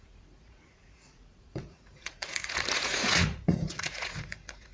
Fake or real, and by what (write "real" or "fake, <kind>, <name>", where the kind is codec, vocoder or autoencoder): fake, vocoder, Vocos